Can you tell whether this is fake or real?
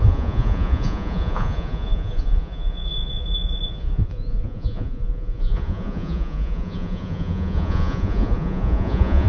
fake